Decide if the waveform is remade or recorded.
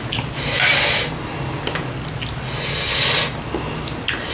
recorded